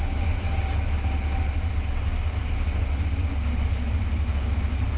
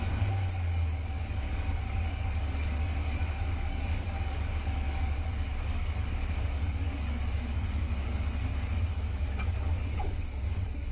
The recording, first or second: first